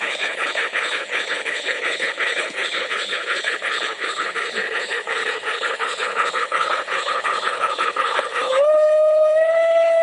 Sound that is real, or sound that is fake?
fake